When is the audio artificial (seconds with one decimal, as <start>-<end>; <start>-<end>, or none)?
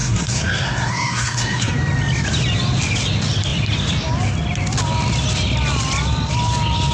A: 0.0-1.7